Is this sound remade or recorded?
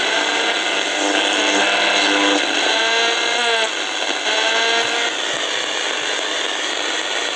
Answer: recorded